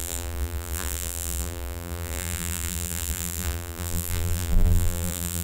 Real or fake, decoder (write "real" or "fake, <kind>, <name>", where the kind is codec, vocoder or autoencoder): fake, vocoder, BigVGAN v2